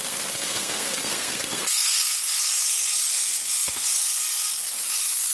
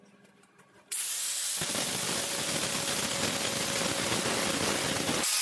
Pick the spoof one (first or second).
first